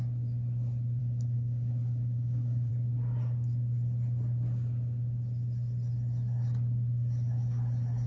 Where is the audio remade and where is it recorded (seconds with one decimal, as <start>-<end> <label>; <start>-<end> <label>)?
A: 0.0-1.0 recorded; 1.0-2.7 remade; 2.7-8.1 recorded